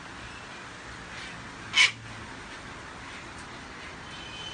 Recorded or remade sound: recorded